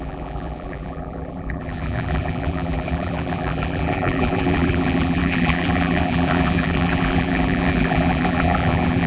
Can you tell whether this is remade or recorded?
remade